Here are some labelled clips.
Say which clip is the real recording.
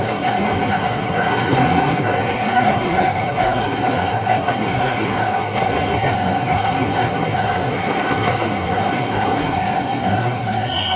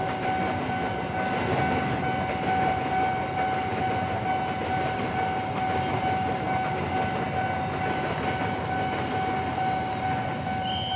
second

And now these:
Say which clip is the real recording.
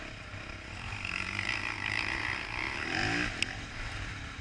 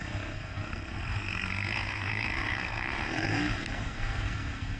first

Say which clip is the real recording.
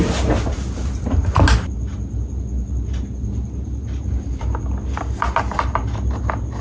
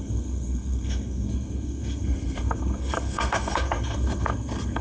first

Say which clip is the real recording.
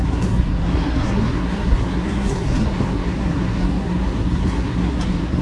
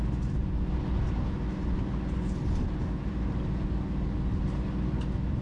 second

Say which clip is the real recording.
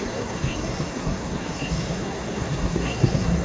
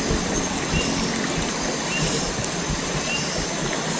second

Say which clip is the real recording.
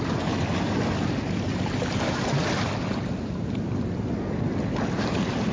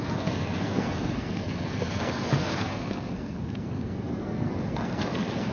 first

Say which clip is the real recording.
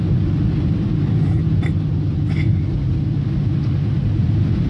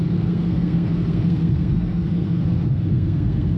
first